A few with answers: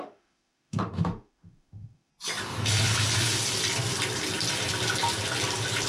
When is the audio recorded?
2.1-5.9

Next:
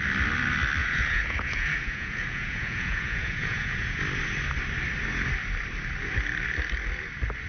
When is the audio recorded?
0.0-0.8; 4.0-7.5

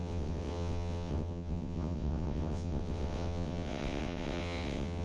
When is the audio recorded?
none

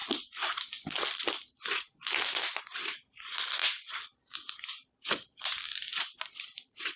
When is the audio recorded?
0.0-2.6